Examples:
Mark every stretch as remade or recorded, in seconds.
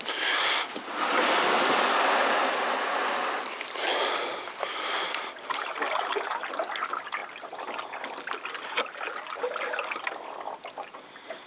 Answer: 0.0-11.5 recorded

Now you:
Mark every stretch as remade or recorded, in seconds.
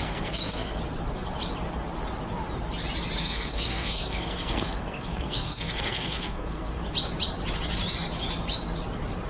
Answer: 0.0-0.8 remade; 0.8-3.2 recorded; 3.2-6.8 remade; 6.8-9.3 recorded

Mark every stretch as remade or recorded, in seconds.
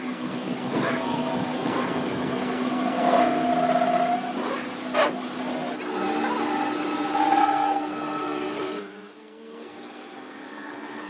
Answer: 0.0-3.5 remade; 3.5-7.4 recorded; 7.4-11.1 remade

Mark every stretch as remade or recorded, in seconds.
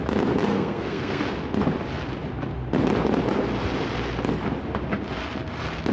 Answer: 0.0-0.5 recorded; 0.5-1.2 remade; 1.2-5.9 recorded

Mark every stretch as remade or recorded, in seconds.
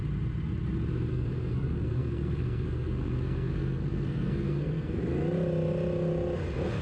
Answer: 0.0-1.1 recorded; 1.1-5.0 remade; 5.0-6.8 recorded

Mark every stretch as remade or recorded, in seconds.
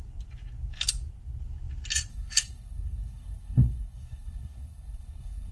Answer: 0.0-2.1 recorded; 2.1-5.5 remade